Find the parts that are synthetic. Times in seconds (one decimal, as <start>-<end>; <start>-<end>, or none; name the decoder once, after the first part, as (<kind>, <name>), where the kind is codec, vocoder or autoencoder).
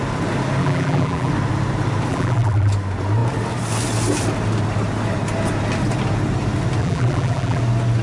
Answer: 0.6-1.3 (vocoder, BigVGAN v2); 2.1-2.7; 6.8-7.6